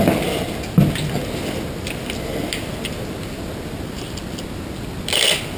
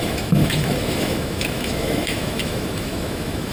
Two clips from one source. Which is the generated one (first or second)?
second